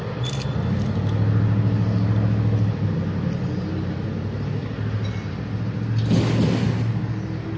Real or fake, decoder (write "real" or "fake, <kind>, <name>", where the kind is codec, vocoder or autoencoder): real